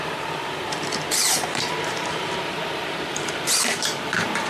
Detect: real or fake fake